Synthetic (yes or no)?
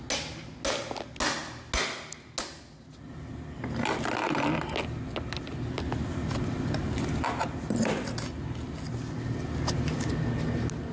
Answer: no